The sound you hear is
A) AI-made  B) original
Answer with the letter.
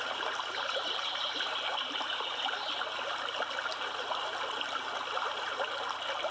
B